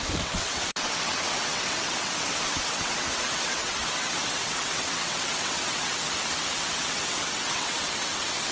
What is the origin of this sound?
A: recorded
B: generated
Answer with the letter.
B